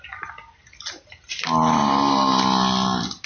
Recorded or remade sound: recorded